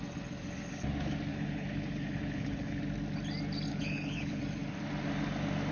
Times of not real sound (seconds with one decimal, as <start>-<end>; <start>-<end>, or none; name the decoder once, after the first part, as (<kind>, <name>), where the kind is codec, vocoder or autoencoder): 1.3-2.8 (codec, HILCodec); 3.7-4.4